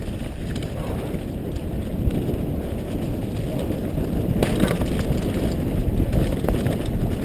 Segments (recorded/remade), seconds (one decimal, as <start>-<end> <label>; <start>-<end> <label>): 0.0-7.2 recorded